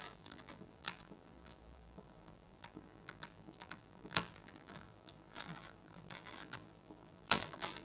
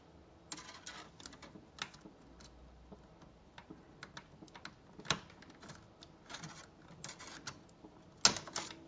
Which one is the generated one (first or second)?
first